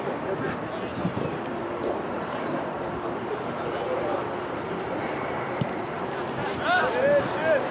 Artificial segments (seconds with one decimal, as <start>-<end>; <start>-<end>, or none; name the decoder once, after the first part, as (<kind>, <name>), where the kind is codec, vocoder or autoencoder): 0.9-4.2 (vocoder, BigVGAN v2)